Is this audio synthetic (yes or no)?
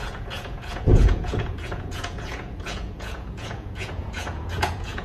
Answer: yes